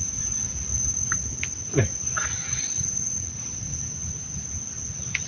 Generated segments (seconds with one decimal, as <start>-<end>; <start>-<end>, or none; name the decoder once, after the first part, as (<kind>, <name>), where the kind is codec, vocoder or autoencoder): 0.0-0.7 (vocoder, Vocos); 2.6-3.7